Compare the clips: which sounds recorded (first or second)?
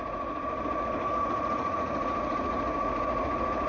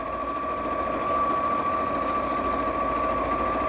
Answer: second